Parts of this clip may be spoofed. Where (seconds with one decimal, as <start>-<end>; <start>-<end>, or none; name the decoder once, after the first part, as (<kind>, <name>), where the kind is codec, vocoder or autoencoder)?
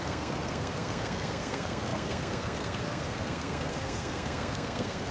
0.0-5.1 (codec, SNAC)